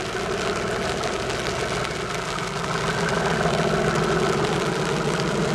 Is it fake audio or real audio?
real